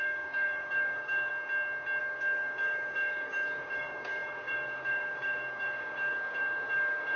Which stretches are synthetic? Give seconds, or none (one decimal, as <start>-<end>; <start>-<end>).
0.0-1.3; 2.0-7.2